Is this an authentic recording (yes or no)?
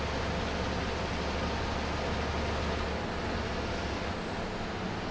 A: yes